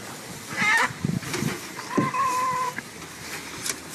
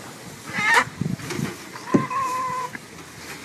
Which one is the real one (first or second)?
second